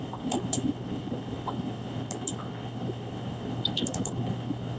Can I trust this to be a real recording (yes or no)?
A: no